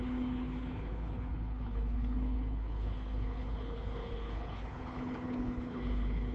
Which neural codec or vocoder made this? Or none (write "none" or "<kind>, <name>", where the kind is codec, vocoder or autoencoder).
codec, HILCodec